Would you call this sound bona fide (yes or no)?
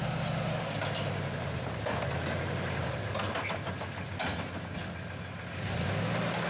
yes